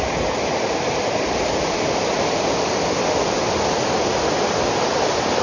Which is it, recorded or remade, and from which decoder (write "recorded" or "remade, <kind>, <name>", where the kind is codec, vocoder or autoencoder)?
recorded